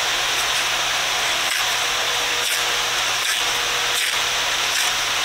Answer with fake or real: real